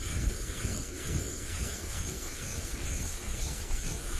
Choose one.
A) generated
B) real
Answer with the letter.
A